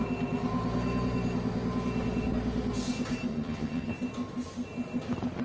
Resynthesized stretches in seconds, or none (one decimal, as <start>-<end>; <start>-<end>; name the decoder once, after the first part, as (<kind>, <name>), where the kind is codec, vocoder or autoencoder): 3.3-3.9 (vocoder, HiFi-GAN)